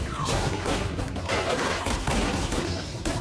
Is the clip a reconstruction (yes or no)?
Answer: yes